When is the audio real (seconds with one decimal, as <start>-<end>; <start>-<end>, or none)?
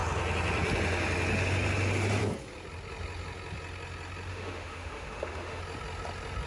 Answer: 0.0-4.3; 5.6-6.5